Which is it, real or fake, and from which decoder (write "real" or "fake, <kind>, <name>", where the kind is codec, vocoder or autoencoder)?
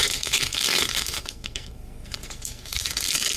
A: fake, codec, SNAC